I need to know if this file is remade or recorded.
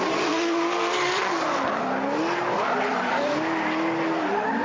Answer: recorded